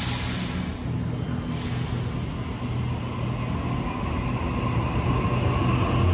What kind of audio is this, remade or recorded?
recorded